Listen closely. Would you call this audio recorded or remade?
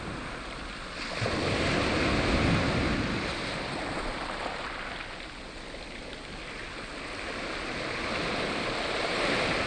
recorded